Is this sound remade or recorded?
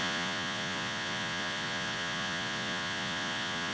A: remade